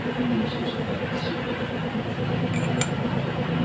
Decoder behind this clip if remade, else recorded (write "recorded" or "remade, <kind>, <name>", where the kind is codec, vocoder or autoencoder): recorded